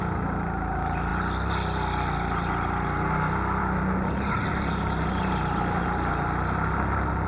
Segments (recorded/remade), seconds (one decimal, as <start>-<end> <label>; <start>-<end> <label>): 0.0-7.3 recorded